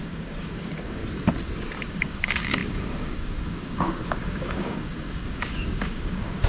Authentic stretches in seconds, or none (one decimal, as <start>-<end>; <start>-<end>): 1.0-1.9